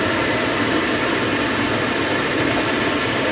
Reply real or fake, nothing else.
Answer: fake